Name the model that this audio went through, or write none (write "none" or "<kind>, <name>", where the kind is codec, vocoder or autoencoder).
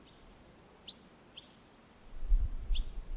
vocoder, BigVGAN v2